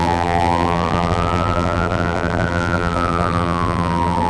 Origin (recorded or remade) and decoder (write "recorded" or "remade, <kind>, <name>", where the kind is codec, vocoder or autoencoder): remade, vocoder, BigVGAN v2